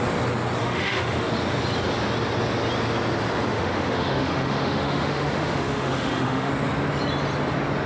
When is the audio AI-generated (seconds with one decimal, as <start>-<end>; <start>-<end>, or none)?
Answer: 0.6-1.3; 3.5-6.5